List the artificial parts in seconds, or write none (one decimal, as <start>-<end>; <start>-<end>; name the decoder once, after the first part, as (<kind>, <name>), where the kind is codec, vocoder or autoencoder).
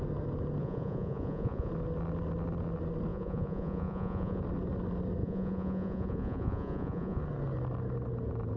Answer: 0.6-1.7 (vocoder, Vocos); 3.1-4.4; 5.2-7.2